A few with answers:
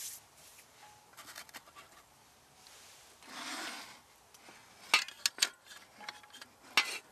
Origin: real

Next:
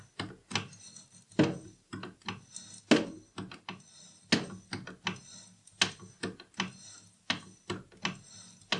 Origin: real